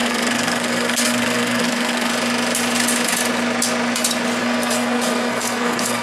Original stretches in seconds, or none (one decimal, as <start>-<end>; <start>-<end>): 2.1-4.4